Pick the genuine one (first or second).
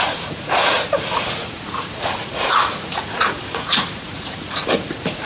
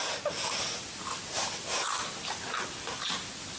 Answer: second